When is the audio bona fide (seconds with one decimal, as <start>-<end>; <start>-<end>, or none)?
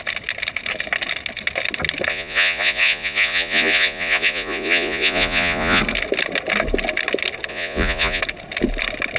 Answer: 0.0-2.1; 5.8-7.5; 8.2-9.2